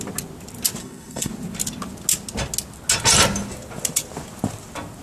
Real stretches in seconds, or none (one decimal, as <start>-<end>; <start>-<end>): 0.0-0.8; 1.3-5.0